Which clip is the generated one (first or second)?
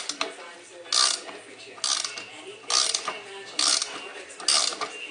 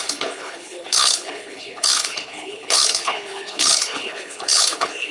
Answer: second